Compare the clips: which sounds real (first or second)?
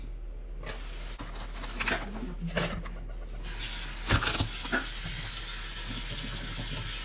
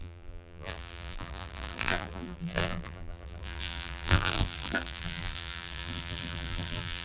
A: first